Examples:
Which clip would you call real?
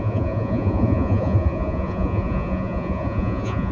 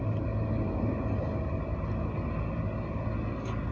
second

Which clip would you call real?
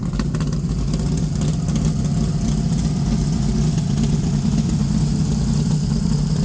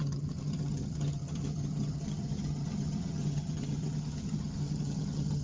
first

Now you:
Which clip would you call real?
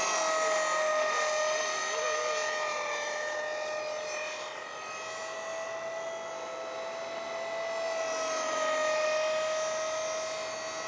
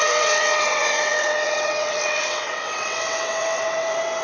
first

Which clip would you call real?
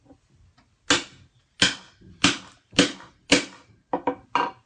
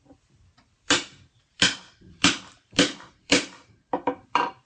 first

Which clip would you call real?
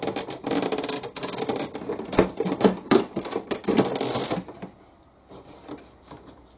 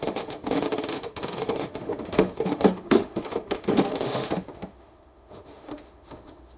first